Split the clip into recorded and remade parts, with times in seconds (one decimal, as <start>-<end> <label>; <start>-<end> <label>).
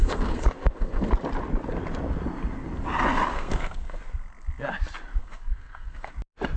0.0-1.1 remade; 1.1-3.3 recorded; 3.3-4.0 remade; 4.0-5.2 recorded; 5.2-6.1 remade; 6.1-6.6 recorded